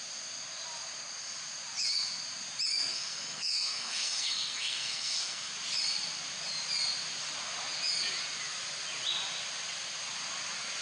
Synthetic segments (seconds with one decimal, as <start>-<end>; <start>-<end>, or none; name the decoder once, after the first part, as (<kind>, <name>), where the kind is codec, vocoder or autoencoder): 2.9-5.5 (codec, SNAC)